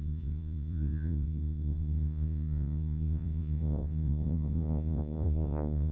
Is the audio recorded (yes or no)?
no